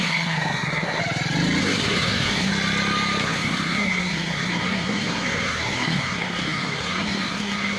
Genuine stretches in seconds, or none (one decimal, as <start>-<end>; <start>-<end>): 1.0-1.6; 2.5-3.2